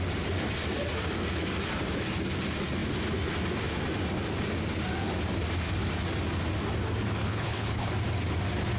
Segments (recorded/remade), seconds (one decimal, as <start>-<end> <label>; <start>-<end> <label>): 0.0-7.2 recorded; 7.2-7.9 remade; 7.9-8.8 recorded

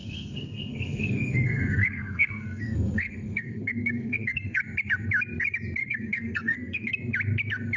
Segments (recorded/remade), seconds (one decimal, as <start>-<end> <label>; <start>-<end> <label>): 0.0-4.6 remade; 4.6-5.8 recorded; 5.8-6.9 remade; 6.9-7.8 recorded

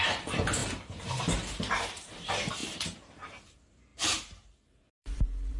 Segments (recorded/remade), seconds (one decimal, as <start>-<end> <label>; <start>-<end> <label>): 0.0-5.6 remade

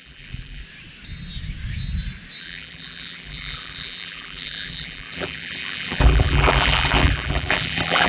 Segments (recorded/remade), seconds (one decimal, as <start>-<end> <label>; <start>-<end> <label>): 0.0-0.6 remade; 0.6-2.4 recorded; 2.4-8.1 remade

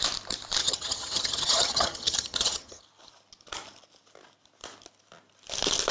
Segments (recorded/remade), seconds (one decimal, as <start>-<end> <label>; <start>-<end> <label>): 0.0-0.6 recorded; 0.6-2.8 remade; 2.8-5.9 recorded

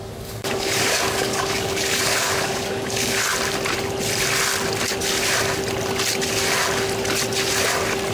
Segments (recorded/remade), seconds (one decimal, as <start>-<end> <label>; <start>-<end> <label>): 0.0-3.3 remade; 3.3-8.1 recorded